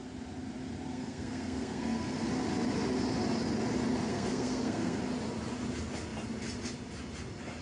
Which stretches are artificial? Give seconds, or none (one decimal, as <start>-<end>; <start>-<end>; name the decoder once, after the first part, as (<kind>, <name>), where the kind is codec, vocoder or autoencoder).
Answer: 0.9-2.3 (codec, SNAC); 4.1-5.0